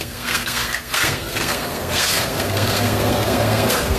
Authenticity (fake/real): fake